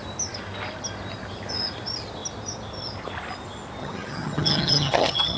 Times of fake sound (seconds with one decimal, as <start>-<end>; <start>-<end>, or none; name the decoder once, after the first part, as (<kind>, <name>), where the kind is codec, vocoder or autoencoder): 3.8-5.4 (vocoder, HiFi-GAN)